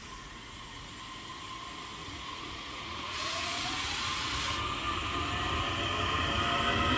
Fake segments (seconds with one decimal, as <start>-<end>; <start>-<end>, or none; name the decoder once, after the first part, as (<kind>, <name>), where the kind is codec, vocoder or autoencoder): 0.0-0.9 (vocoder, Vocos); 2.0-4.5